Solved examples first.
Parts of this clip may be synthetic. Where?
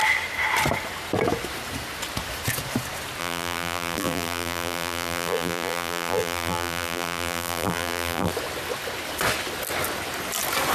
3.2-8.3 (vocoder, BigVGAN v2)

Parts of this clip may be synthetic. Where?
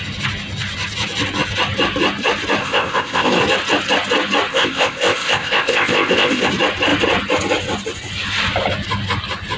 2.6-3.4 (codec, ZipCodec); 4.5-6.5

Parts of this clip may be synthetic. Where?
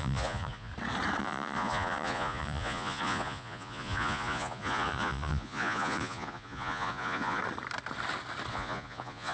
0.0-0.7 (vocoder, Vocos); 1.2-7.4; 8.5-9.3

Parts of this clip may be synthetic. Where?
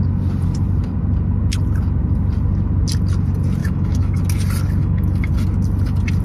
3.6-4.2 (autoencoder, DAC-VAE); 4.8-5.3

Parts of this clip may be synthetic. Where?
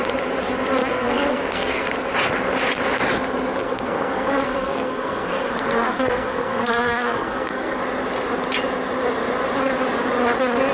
0.8-1.9 (codec, SNAC); 3.6-7.8